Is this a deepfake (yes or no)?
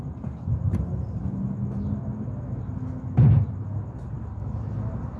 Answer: no